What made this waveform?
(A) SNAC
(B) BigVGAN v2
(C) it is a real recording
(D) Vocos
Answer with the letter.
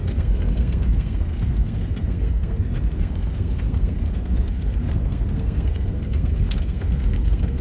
A